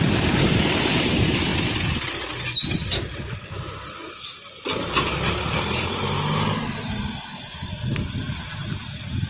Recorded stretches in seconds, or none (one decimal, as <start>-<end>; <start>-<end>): 0.0-9.3